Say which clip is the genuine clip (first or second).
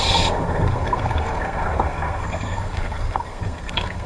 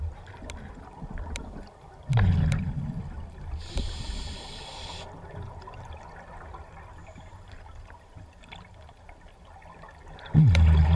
second